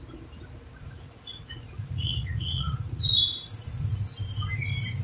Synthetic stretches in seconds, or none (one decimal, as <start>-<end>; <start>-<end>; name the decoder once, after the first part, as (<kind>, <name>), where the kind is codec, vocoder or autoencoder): 0.8-3.8 (vocoder, Vocos)